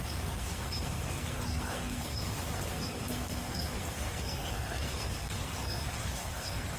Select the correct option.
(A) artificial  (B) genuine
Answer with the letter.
A